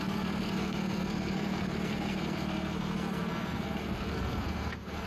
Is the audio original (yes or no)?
no